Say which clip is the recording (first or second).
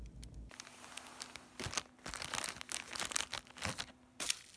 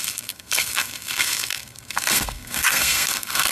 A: first